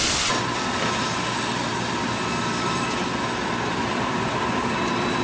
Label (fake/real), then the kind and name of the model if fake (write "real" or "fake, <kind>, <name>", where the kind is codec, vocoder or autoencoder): real